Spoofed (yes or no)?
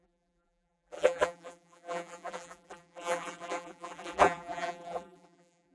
yes